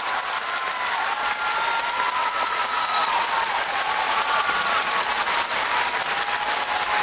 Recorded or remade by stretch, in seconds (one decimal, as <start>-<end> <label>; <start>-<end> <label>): 0.0-2.2 recorded; 2.2-5.2 remade; 5.2-7.0 recorded